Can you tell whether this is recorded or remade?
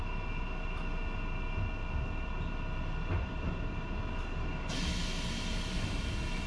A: recorded